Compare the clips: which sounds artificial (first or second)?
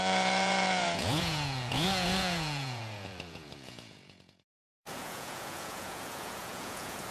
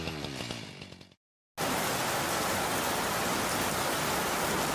first